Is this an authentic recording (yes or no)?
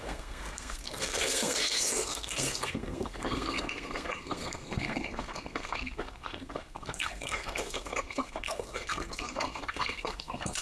no